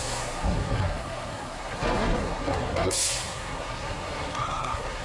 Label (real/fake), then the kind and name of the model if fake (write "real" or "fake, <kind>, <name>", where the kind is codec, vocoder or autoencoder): fake, codec, SNAC